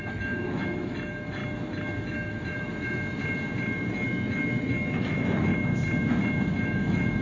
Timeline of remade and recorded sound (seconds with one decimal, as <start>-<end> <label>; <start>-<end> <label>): 0.0-1.4 remade; 1.4-2.0 recorded; 2.0-3.2 remade; 3.2-3.9 recorded; 3.9-5.5 remade; 5.5-6.5 recorded; 6.5-7.2 remade